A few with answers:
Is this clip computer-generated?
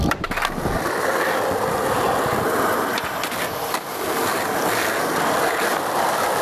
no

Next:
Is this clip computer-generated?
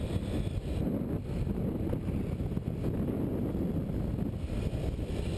no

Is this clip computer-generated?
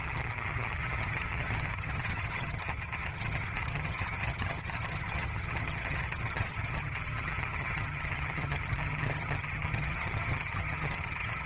yes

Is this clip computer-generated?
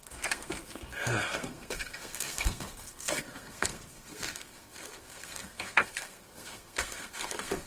yes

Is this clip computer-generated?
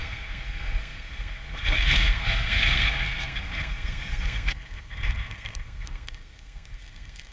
yes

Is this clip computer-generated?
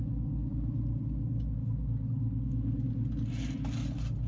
no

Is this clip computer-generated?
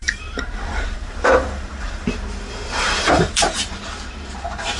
yes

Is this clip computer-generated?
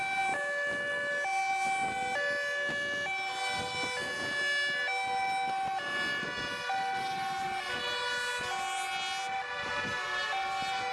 no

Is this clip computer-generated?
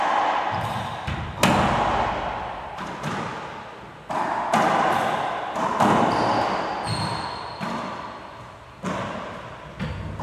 no